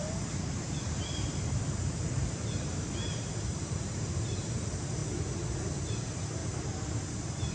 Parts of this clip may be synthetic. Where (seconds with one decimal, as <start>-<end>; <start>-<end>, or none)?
0.0-5.0; 5.9-6.4; 6.9-7.5